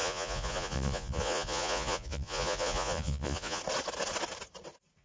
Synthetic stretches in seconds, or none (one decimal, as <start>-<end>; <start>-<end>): 0.0-3.6